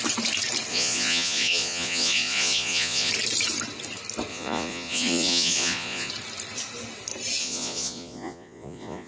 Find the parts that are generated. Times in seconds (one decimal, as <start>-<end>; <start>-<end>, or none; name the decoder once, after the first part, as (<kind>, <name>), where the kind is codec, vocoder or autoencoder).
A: 0.7-3.1 (vocoder, Vocos); 4.3-6.1; 7.4-9.1